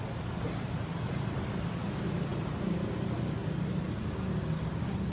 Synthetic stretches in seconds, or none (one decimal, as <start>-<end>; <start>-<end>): 2.3-2.9